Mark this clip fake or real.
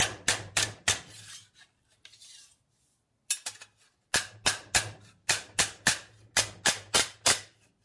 real